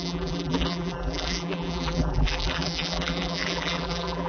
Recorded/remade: remade